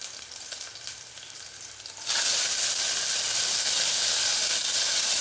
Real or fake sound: real